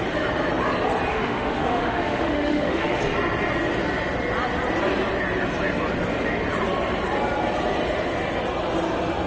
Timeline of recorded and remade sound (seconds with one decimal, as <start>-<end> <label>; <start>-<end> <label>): 0.0-1.1 recorded; 1.1-3.0 remade; 3.0-9.3 recorded